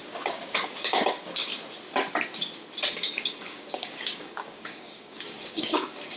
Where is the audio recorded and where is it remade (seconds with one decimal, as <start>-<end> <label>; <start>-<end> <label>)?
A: 0.0-1.5 remade; 1.5-2.9 recorded; 2.9-6.2 remade

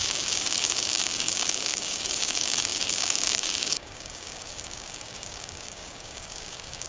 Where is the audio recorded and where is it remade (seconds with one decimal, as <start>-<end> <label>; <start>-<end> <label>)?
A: 0.0-6.9 remade

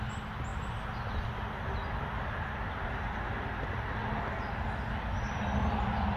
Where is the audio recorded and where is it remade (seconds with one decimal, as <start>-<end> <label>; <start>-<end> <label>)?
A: 0.0-6.2 recorded

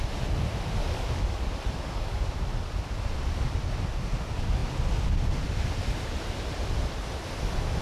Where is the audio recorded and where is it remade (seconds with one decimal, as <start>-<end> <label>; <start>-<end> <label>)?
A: 0.0-0.8 recorded; 0.8-2.2 remade; 2.2-7.8 recorded

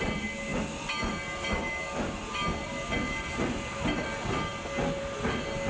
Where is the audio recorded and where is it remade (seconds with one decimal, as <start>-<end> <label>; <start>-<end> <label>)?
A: 0.0-5.7 recorded

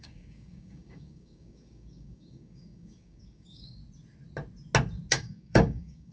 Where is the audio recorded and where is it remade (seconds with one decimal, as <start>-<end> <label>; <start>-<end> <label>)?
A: 0.0-3.8 remade; 3.8-5.1 recorded; 5.1-6.1 remade